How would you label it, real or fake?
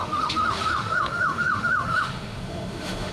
fake